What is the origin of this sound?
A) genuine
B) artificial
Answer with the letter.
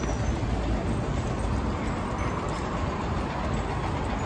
A